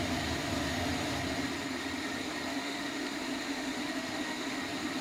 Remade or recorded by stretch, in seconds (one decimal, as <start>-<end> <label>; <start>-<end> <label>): 0.0-2.5 recorded; 2.5-4.6 remade; 4.6-5.0 recorded